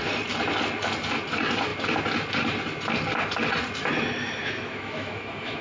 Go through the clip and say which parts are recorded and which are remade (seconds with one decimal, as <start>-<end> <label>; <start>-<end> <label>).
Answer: 0.0-4.4 recorded; 4.4-5.6 remade